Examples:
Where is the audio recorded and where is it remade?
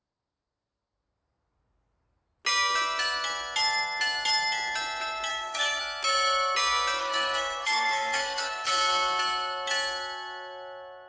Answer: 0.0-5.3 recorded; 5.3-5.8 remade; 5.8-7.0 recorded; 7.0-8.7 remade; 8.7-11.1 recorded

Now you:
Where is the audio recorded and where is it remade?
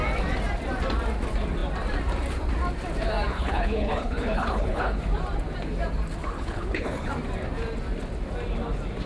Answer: 0.0-3.3 recorded; 3.3-5.0 remade; 5.0-6.2 recorded; 6.2-7.1 remade; 7.1-9.1 recorded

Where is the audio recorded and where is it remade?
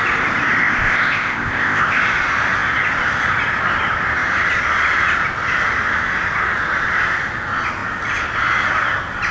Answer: 0.0-0.6 recorded; 0.6-2.0 remade; 2.0-9.3 recorded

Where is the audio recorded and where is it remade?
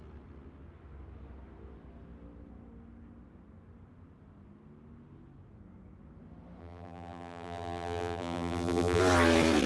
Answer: 0.0-6.6 recorded; 6.6-9.0 remade; 9.0-9.7 recorded